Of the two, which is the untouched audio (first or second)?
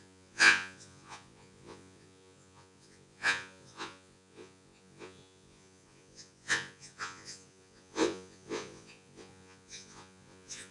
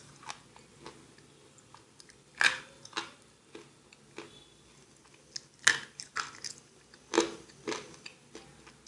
second